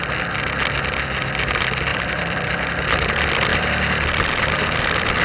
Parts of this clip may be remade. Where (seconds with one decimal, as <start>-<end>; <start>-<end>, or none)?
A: 1.9-2.7; 3.5-5.2